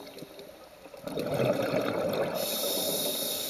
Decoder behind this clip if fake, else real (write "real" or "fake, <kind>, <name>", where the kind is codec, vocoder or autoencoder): real